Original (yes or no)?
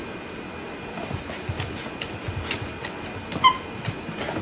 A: yes